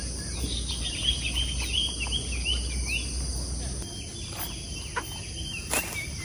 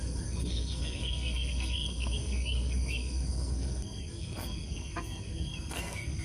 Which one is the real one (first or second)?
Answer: first